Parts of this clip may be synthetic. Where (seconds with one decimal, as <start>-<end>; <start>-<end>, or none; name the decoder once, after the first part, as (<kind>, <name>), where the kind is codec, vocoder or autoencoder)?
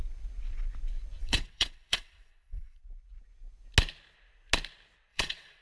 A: 1.2-2.8 (vocoder, WaveNeXt); 5.1-5.6